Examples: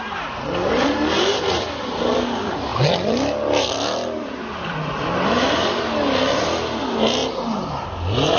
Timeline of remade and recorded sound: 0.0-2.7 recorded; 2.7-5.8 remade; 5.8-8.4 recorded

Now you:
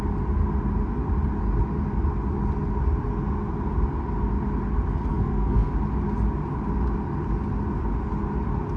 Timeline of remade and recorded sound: 0.0-5.1 recorded; 5.1-5.7 remade; 5.7-8.8 recorded

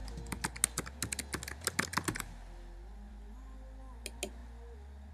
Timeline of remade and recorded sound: 0.0-5.1 recorded

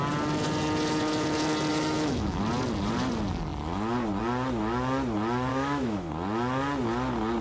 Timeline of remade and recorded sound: 0.0-1.7 recorded; 1.7-2.4 remade; 2.4-5.5 recorded; 5.5-6.1 remade; 6.1-7.4 recorded

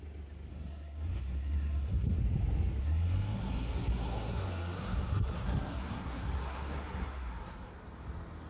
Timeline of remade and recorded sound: 0.0-0.5 recorded; 0.5-2.2 remade; 2.2-2.8 recorded; 2.8-7.7 remade; 7.7-8.5 recorded

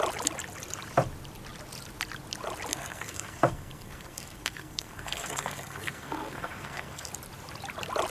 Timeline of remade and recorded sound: 0.0-2.7 recorded; 2.7-7.1 remade; 7.1-8.1 recorded

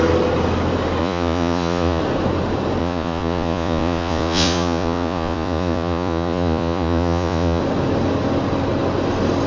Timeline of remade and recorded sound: 0.0-1.0 recorded; 1.0-2.0 remade; 2.0-2.8 recorded; 2.8-7.6 remade; 7.6-9.5 recorded

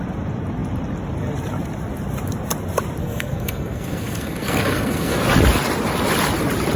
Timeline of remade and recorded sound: 0.0-3.0 recorded; 3.0-5.2 remade; 5.2-6.8 recorded